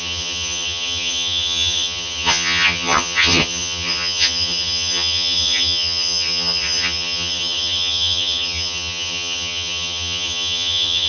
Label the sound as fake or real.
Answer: fake